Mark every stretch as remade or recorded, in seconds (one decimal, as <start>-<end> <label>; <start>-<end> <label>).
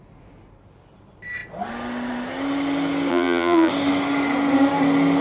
0.0-3.1 recorded; 3.1-3.7 remade; 3.7-5.2 recorded